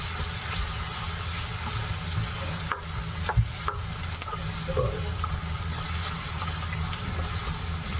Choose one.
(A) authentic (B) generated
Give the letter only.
A